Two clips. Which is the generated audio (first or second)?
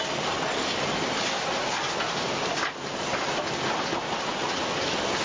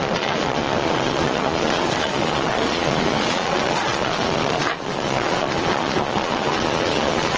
second